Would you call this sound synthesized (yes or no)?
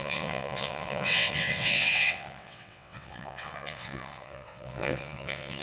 yes